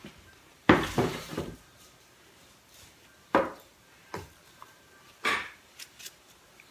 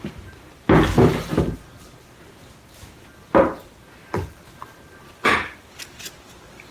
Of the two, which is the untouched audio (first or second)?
second